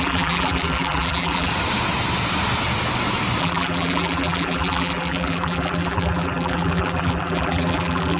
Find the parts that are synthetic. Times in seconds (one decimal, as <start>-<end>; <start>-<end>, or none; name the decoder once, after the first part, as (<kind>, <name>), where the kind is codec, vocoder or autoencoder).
0.0-1.5 (vocoder, BigVGAN v2); 3.4-8.2